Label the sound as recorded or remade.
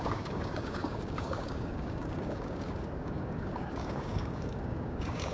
remade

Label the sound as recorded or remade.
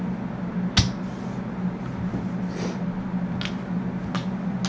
recorded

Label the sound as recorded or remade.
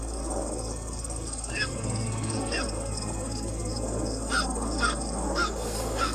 remade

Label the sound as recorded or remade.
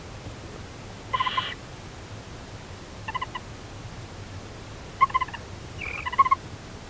recorded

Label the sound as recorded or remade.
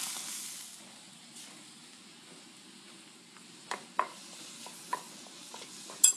recorded